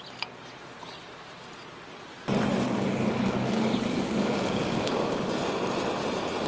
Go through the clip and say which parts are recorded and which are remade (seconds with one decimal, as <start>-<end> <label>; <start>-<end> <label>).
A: 0.0-2.5 recorded; 2.5-5.4 remade; 5.4-6.5 recorded